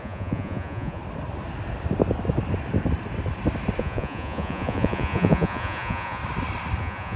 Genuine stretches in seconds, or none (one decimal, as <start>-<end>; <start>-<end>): 1.0-3.8; 6.2-6.8